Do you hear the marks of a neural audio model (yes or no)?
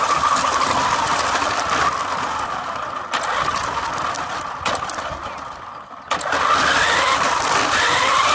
no